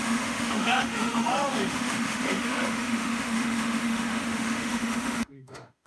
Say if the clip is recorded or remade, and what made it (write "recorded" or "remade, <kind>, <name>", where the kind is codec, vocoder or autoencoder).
remade, autoencoder, DAC-VAE